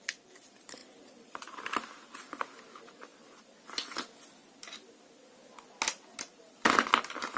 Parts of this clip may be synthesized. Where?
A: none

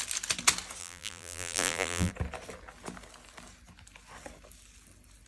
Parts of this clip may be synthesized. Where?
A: 0.8-2.1 (vocoder, BigVGAN v2)